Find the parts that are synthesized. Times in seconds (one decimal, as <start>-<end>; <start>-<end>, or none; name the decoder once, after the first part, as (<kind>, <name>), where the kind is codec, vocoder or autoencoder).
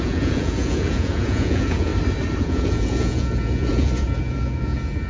0.0-1.9 (vocoder, Vocos); 2.4-5.1